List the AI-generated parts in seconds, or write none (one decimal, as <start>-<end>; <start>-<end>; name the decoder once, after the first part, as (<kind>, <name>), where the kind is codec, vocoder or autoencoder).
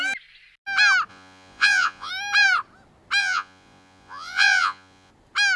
1.1-2.1 (vocoder, Vocos); 3.2-5.1